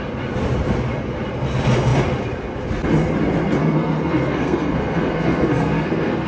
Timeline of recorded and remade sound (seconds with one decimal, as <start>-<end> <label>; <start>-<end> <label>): 0.0-3.6 recorded; 3.6-6.3 remade